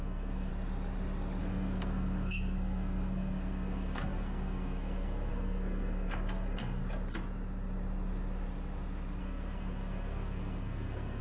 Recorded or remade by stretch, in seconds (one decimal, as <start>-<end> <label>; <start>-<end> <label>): 0.0-0.5 remade; 0.5-1.4 recorded; 1.4-6.8 remade; 6.8-9.2 recorded; 9.2-11.2 remade